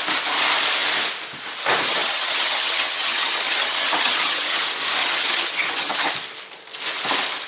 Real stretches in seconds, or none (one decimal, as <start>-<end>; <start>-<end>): 0.0-1.9; 4.6-5.0; 6.1-7.5